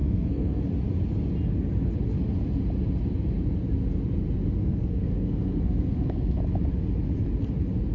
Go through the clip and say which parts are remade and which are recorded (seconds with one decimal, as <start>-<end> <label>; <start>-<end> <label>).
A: 0.0-0.6 remade; 0.6-4.6 recorded; 4.6-6.4 remade; 6.4-7.9 recorded